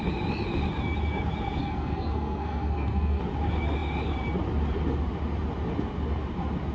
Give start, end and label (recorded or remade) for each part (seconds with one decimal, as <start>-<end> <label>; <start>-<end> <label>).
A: 0.0-1.6 recorded; 1.6-3.2 remade; 3.2-6.7 recorded